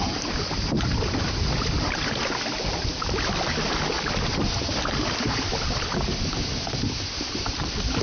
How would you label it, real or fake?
real